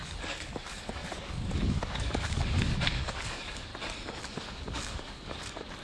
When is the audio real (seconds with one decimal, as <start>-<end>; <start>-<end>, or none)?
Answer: 3.7-4.2